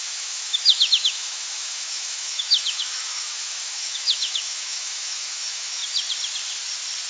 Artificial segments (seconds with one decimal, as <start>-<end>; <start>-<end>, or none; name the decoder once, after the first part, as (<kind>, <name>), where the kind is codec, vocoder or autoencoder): 0.0-5.8 (autoencoder, DAC-VAE)